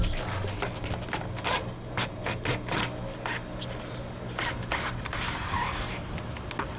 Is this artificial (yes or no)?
no